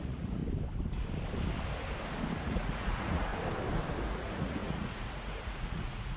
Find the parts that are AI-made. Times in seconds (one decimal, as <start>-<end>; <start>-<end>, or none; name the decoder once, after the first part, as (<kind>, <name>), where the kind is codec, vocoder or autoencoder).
0.0-0.4 (vocoder, Vocos); 2.4-3.3; 4.0-6.2